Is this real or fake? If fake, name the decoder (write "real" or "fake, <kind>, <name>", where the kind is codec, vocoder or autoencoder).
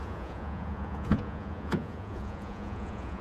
fake, vocoder, Vocos